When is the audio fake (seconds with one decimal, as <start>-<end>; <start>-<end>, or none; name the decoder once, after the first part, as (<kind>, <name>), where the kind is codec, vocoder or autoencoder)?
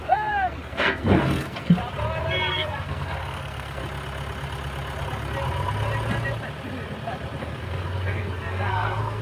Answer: 0.0-1.8 (codec, SNAC); 2.5-3.8; 7.4-9.2